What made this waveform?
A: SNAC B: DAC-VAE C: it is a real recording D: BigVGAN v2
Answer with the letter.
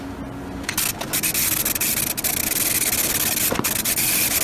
C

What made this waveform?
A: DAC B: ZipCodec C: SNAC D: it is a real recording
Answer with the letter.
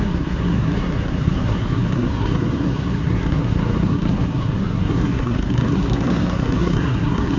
C